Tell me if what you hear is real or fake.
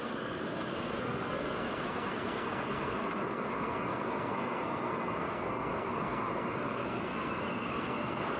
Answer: fake